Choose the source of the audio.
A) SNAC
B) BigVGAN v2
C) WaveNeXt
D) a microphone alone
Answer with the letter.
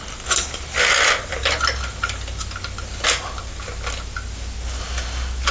D